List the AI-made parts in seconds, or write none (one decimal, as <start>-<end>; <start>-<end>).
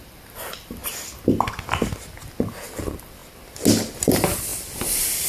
0.0-0.8; 2.6-3.2; 4.0-5.3